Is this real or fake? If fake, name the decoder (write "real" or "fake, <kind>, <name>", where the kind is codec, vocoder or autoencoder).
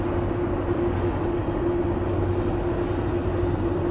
real